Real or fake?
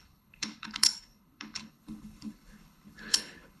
fake